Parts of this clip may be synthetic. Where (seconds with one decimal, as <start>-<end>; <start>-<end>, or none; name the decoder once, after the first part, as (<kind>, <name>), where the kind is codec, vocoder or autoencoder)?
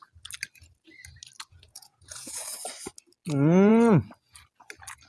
1.5-2.6 (vocoder, Vocos)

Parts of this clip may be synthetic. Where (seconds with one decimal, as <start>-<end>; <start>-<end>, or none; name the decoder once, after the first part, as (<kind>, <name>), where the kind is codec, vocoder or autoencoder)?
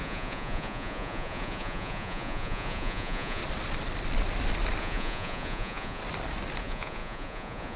0.0-3.4 (vocoder, Vocos); 4.8-6.0; 6.6-7.8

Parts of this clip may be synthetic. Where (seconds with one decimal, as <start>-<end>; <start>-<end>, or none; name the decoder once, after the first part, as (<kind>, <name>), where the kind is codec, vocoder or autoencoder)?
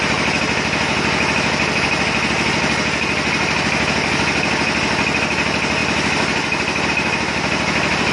none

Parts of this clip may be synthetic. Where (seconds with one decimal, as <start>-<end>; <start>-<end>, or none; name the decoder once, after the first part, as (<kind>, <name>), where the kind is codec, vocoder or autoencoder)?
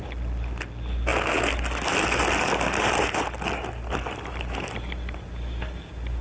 none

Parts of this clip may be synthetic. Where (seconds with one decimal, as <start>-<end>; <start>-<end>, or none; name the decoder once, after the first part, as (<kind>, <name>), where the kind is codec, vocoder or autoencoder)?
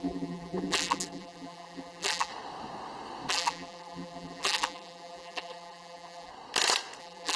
0.0-2.3 (vocoder, BigVGAN v2); 3.3-6.3; 7.0-7.4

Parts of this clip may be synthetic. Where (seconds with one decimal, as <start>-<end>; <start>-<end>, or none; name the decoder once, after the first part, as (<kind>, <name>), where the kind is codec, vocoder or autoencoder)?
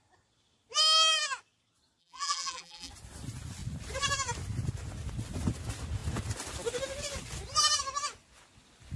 2.0-2.9 (vocoder, BigVGAN v2)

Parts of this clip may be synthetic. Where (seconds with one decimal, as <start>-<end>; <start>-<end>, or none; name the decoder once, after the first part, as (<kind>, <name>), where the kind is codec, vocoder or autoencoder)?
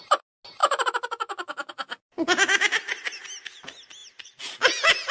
0.6-1.7 (autoencoder, DAC-VAE)